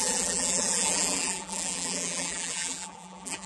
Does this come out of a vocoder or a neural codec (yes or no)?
yes